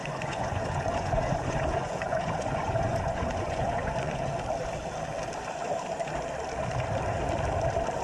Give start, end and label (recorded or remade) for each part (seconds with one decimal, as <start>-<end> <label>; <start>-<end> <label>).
0.0-4.4 remade; 4.4-8.0 recorded